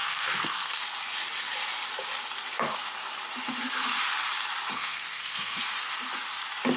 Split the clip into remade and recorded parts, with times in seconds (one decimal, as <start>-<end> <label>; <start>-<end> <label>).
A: 0.0-0.8 remade; 0.8-4.7 recorded; 4.7-5.6 remade; 5.6-6.8 recorded